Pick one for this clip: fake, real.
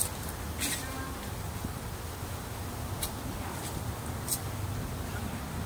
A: real